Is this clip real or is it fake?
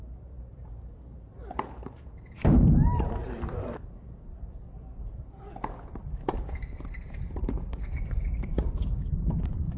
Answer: fake